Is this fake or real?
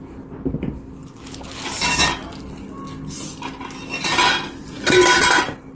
real